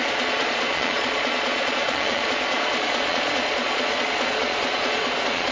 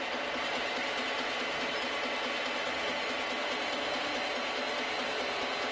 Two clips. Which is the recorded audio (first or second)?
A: second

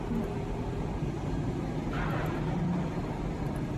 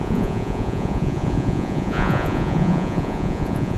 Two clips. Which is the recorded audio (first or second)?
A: first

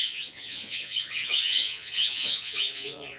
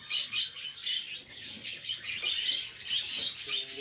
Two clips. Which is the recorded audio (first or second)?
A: second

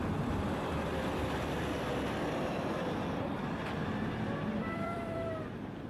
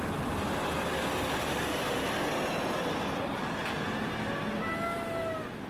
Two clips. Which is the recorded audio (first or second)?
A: second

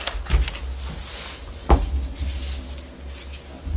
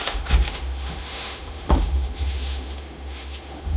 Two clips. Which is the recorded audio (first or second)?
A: first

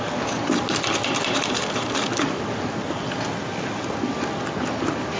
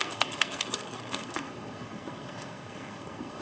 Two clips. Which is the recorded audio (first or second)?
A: first